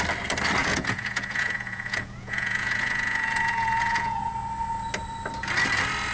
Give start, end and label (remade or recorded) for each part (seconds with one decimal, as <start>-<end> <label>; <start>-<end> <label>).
0.0-0.6 recorded; 0.6-4.3 remade; 4.3-6.1 recorded